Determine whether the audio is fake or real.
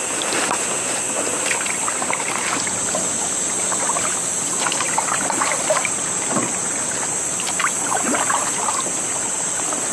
real